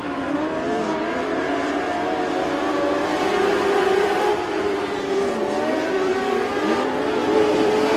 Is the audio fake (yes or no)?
yes